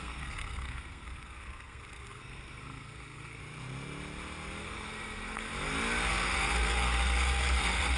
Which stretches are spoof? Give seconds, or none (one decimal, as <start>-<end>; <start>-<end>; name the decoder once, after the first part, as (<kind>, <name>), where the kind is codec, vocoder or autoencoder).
0.0-3.4 (codec, SNAC); 4.6-5.5; 6.1-8.0